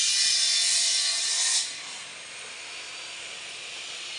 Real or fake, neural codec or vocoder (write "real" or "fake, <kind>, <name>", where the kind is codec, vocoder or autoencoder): real